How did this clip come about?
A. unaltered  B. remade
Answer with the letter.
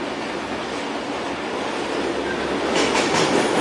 A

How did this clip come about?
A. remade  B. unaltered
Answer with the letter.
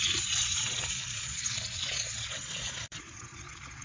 A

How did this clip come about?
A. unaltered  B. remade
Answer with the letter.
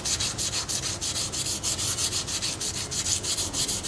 A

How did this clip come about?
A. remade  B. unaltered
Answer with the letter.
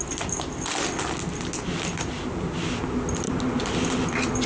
B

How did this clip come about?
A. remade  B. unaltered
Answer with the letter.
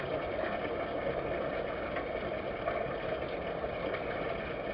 B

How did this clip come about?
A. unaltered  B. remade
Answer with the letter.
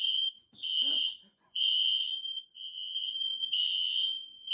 B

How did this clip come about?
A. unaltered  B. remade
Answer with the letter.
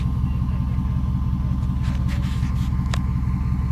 A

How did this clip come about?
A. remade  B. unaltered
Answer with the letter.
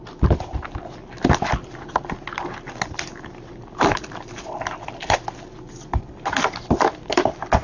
B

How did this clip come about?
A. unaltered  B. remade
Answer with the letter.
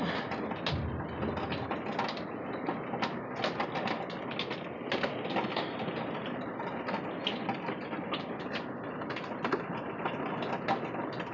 A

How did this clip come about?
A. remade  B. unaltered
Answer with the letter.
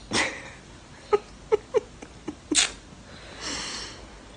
B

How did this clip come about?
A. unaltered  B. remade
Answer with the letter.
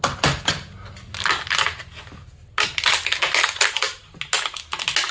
A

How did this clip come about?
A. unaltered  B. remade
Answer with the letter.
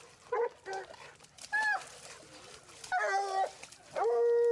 A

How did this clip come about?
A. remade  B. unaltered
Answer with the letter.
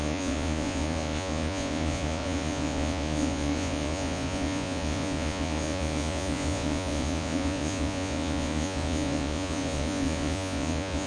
A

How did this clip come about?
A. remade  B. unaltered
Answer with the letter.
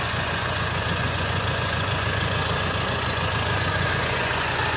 A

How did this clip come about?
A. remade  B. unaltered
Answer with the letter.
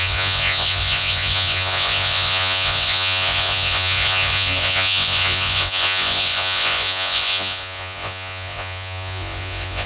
A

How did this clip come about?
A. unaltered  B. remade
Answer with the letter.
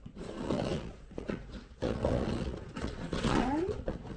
B